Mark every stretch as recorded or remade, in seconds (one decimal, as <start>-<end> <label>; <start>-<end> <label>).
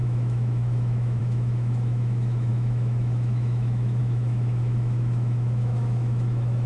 0.0-6.7 remade